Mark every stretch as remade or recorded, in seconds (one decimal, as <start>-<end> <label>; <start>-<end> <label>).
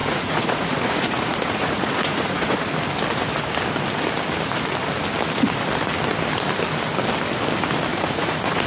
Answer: 0.0-2.7 remade; 2.7-7.9 recorded; 7.9-8.7 remade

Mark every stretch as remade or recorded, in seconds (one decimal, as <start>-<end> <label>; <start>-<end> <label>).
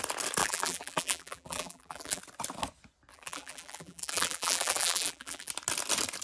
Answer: 0.0-0.4 recorded; 0.4-2.2 remade; 2.2-3.1 recorded; 3.1-5.5 remade; 5.5-6.2 recorded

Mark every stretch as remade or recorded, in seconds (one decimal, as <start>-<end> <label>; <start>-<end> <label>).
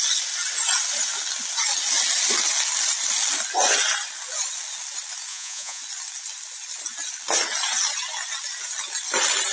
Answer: 0.0-5.3 recorded; 5.3-5.8 remade; 5.8-9.5 recorded